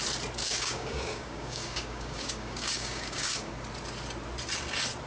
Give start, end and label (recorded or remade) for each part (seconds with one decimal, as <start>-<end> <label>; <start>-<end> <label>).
0.0-0.4 recorded; 0.4-3.5 remade; 3.5-5.1 recorded